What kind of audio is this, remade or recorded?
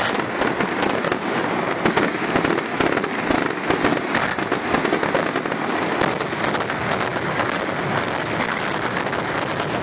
recorded